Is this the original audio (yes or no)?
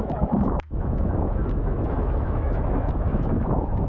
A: no